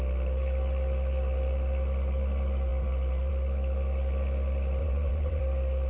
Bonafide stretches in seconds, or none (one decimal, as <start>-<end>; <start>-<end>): 0.0-4.8; 5.4-5.9